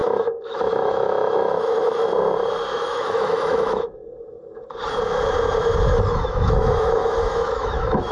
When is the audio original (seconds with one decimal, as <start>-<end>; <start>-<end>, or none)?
2.1-2.8; 4.0-6.1